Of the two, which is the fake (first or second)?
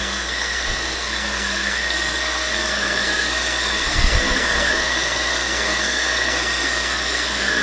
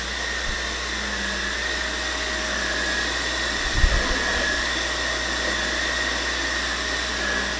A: first